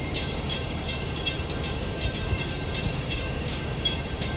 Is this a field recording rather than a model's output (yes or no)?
no